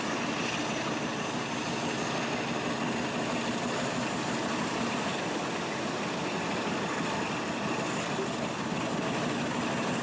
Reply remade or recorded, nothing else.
recorded